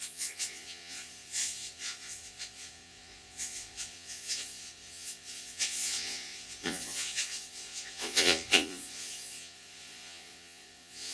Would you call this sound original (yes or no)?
no